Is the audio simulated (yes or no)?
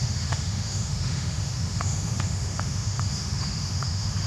yes